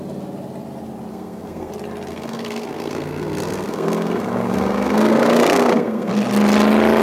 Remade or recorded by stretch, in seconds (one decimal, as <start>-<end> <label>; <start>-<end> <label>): 0.0-1.1 recorded; 1.1-1.7 remade; 1.7-2.1 recorded; 2.1-6.1 remade; 6.1-7.0 recorded